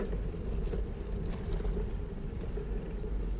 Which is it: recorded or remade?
recorded